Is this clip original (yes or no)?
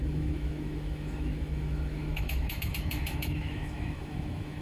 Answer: no